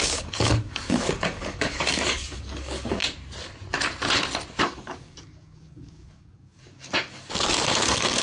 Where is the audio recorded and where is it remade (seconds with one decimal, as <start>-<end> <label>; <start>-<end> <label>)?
0.0-3.0 remade; 3.0-4.6 recorded; 4.6-8.2 remade